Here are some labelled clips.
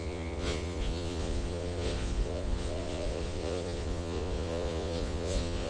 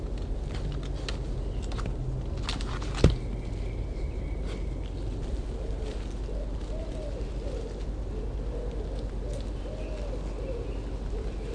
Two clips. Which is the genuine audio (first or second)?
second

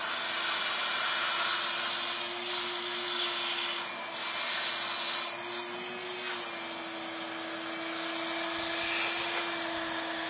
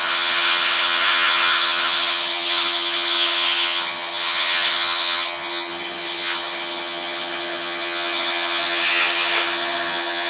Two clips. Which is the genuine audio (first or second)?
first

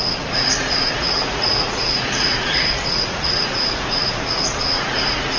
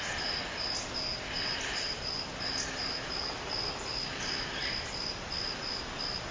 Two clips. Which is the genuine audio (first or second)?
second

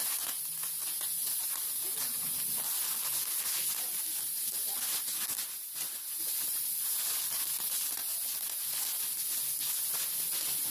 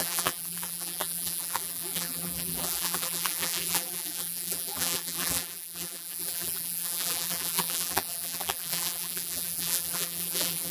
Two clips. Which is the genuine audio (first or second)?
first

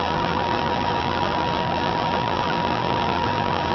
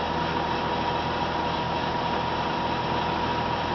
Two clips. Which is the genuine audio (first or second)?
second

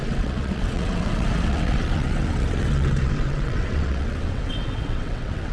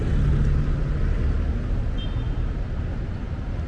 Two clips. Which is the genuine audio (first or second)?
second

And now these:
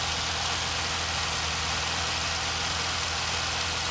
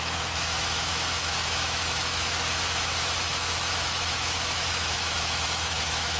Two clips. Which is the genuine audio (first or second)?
first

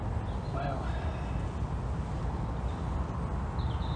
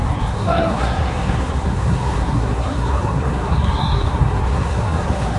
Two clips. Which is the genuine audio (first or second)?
first